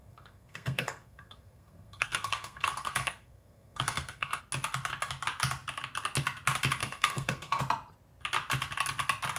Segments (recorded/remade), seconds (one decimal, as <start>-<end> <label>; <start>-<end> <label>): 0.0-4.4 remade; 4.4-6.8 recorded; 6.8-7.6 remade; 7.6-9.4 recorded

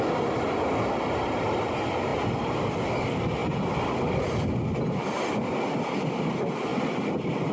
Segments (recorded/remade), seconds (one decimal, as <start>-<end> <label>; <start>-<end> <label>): 0.0-7.5 recorded

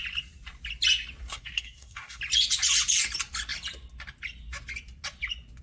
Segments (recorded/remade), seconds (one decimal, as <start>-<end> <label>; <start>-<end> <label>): 0.0-1.3 recorded; 1.3-2.2 remade; 2.2-5.6 recorded

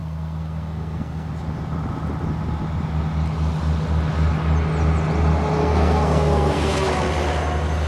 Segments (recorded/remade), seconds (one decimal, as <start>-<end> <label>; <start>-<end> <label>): 0.0-1.3 remade; 1.3-5.6 recorded; 5.6-6.9 remade; 6.9-7.9 recorded

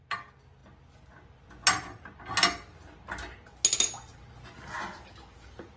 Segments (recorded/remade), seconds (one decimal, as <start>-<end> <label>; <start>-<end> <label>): 0.0-5.8 recorded

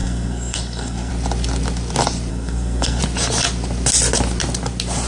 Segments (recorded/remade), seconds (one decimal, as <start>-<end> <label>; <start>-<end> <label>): 0.0-1.1 remade; 1.1-2.3 recorded; 2.3-3.0 remade; 3.0-5.1 recorded